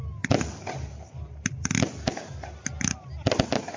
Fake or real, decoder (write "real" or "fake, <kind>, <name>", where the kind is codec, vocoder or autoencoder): real